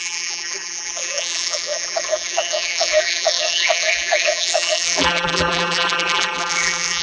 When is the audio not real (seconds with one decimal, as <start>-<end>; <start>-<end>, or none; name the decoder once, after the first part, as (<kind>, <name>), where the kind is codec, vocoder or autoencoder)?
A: 0.0-7.0 (vocoder, BigVGAN v2)